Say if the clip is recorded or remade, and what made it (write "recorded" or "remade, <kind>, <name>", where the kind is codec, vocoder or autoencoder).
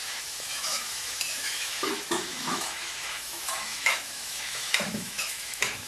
remade, autoencoder, DAC-VAE